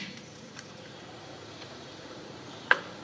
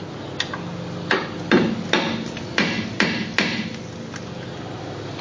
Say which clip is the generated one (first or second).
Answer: first